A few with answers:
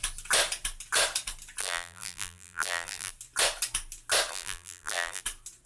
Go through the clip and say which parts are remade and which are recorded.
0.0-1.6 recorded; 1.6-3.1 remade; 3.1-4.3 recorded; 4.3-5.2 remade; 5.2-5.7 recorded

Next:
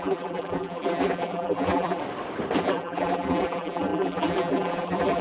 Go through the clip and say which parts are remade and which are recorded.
0.0-2.0 remade; 2.0-2.6 recorded; 2.6-5.2 remade

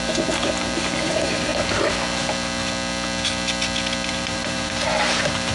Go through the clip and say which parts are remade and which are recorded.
0.0-1.5 remade; 1.5-4.1 recorded; 4.1-5.5 remade

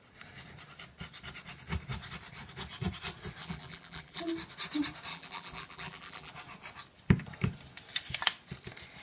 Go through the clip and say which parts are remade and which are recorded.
0.0-3.4 recorded; 3.4-4.3 remade; 4.3-5.1 recorded; 5.1-6.3 remade; 6.3-9.0 recorded